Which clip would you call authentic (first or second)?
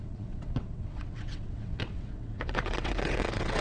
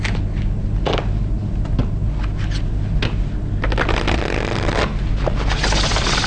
second